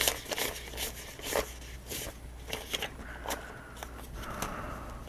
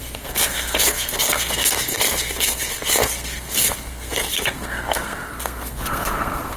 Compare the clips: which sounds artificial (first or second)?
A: second